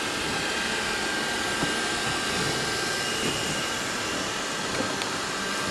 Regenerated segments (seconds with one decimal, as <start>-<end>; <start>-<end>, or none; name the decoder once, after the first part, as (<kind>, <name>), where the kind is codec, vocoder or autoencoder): 0.0-1.6 (vocoder, BigVGAN v2); 5.0-5.7